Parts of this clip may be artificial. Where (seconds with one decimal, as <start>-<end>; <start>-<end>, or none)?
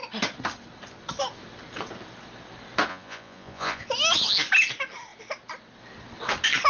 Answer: 2.9-3.8